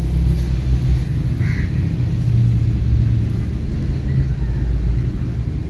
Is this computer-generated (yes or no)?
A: no